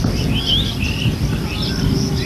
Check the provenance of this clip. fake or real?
real